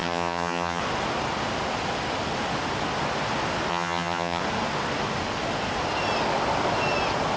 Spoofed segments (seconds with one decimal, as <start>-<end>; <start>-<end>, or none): 0.0-0.8; 3.7-4.4